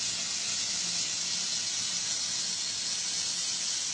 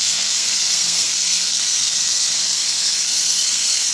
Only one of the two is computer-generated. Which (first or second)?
second